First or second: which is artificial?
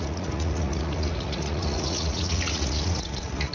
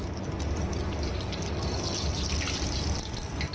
first